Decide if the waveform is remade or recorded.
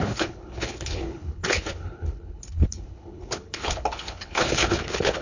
remade